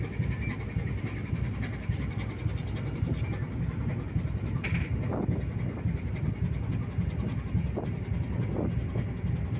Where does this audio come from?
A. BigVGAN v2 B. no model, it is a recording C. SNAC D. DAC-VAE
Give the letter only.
B